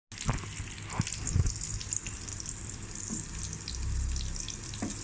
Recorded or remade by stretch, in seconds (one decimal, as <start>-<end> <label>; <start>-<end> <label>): 0.0-5.0 recorded